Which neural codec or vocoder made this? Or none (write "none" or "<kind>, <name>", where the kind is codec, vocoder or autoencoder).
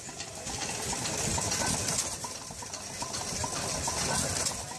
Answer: none